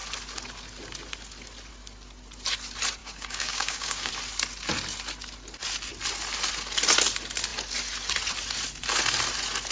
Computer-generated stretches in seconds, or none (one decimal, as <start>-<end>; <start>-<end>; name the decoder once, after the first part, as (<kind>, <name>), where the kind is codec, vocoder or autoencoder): 3.0-4.1 (codec, DAC)